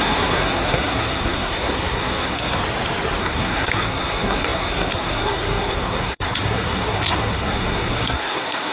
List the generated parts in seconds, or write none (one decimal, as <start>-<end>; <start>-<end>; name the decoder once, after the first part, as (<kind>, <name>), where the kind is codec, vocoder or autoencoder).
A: 0.0-2.6 (codec, SNAC); 3.2-8.7